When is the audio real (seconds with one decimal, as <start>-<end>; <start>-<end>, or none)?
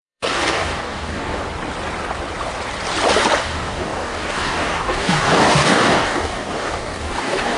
1.4-3.4